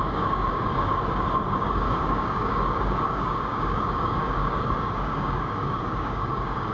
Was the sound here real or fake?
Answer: fake